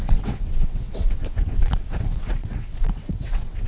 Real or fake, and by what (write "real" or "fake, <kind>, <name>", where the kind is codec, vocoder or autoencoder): fake, vocoder, WaveNeXt